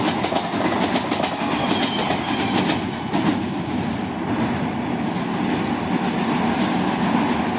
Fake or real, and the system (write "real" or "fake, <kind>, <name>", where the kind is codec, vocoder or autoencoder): real